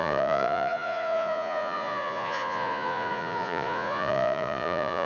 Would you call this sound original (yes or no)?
no